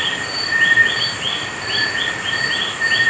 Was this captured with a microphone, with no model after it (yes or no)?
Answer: yes